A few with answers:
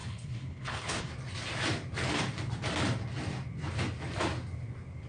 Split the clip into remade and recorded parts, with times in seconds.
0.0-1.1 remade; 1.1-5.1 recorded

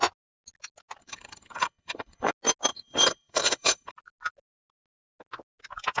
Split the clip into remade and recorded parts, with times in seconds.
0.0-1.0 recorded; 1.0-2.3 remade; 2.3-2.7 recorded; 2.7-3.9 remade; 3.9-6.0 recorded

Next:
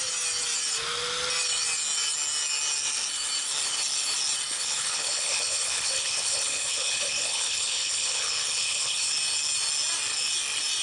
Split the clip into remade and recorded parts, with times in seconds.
0.0-4.5 recorded; 4.5-9.1 remade; 9.1-10.8 recorded

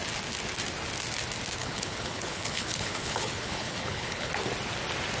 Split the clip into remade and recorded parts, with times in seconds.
0.0-1.6 recorded; 1.6-4.3 remade; 4.3-5.2 recorded

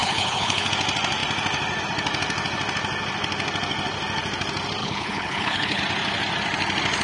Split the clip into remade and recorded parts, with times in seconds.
0.0-0.7 remade; 0.7-4.8 recorded; 4.8-5.8 remade; 5.8-7.0 recorded

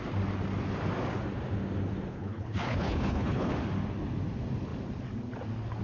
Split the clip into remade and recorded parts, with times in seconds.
0.0-2.1 recorded; 2.1-3.5 remade; 3.5-5.8 recorded